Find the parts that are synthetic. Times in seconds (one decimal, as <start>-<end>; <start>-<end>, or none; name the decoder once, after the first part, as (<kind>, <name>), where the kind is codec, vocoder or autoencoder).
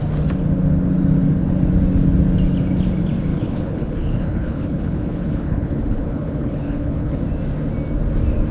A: 3.3-7.2 (codec, HILCodec)